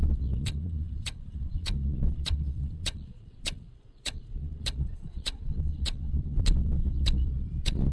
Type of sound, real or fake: fake